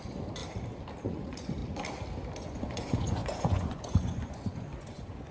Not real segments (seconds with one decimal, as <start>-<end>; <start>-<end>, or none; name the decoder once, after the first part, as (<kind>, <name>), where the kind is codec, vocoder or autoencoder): 0.0-0.4 (vocoder, Vocos); 1.1-1.6; 2.4-5.3